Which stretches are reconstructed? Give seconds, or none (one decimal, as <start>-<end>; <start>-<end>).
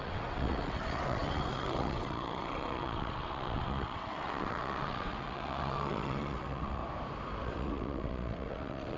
0.0-6.8; 7.4-9.0